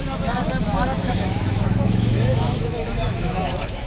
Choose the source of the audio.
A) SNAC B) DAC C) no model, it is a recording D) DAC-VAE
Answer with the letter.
D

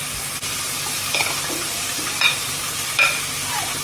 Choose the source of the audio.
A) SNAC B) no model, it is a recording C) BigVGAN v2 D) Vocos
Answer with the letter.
B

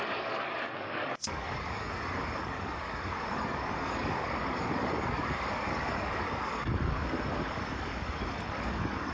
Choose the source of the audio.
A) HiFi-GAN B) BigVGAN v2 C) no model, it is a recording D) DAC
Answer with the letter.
D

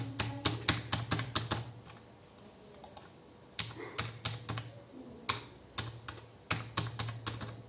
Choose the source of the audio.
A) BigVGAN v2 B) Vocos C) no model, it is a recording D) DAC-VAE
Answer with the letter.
C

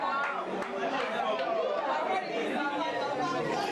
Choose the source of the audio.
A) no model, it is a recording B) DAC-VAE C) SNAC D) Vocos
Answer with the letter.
A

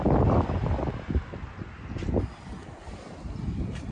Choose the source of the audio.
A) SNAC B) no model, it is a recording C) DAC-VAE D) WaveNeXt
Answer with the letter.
B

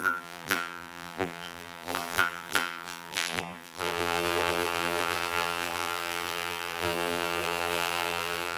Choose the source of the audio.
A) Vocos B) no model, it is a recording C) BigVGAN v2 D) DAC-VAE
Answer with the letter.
C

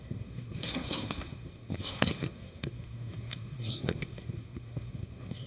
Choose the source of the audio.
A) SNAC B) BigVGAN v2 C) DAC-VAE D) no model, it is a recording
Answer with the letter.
A